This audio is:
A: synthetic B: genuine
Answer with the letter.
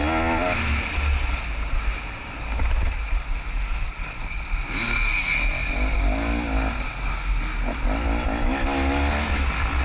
B